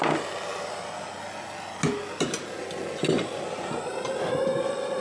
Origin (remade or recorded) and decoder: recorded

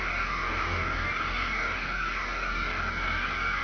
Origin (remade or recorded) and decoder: remade, codec, DAC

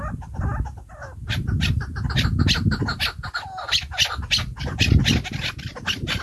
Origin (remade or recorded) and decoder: recorded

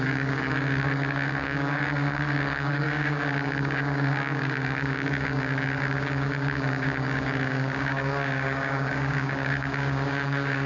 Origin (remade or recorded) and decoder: remade, codec, DAC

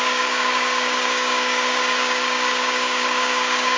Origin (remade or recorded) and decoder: remade, codec, DAC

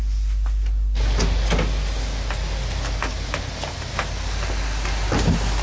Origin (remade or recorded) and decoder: recorded